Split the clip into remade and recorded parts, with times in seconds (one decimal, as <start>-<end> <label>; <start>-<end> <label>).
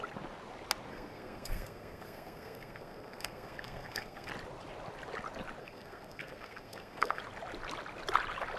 0.0-0.9 recorded; 0.9-4.3 remade; 4.3-5.6 recorded; 5.6-7.2 remade; 7.2-8.6 recorded